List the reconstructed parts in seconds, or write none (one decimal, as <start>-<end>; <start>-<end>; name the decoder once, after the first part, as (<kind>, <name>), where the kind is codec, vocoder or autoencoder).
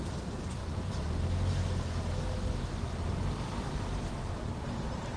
none